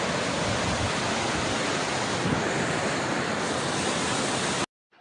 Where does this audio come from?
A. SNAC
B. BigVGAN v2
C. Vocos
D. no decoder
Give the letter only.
D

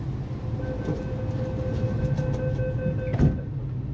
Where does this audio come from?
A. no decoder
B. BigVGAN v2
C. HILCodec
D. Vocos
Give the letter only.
A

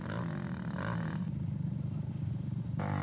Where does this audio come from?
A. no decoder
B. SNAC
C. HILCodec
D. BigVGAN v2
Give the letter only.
A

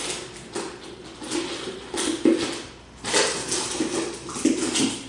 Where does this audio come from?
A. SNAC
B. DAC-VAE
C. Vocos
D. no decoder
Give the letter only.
D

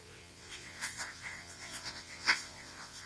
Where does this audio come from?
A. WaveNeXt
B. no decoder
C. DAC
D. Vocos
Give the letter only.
A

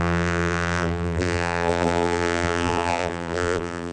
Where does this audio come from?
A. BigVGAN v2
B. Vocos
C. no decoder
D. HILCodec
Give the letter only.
A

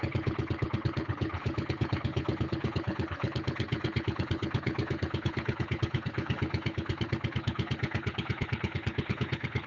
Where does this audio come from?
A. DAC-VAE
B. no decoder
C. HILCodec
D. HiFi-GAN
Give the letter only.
C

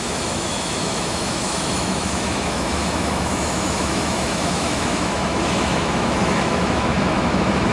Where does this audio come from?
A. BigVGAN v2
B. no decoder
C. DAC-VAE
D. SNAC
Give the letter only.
C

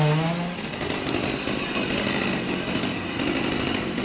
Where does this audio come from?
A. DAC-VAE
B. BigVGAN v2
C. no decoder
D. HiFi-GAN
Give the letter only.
C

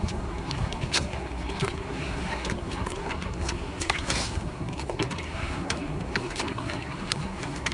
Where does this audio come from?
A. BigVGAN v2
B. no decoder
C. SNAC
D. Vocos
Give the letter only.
C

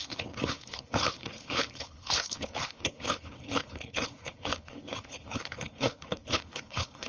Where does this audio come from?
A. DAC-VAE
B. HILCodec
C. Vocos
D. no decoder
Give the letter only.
B